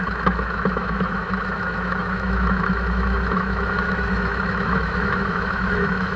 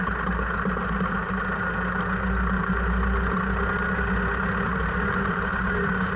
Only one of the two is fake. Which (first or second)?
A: first